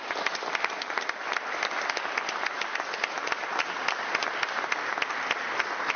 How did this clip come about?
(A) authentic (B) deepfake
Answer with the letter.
A